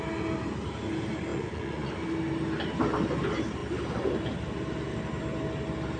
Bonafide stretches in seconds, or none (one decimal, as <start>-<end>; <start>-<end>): 0.0-1.3; 1.9-6.0